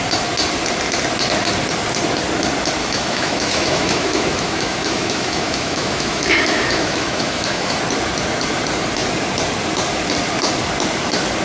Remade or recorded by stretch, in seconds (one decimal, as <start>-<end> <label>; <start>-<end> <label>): 0.0-2.8 recorded; 2.8-7.8 remade; 7.8-11.4 recorded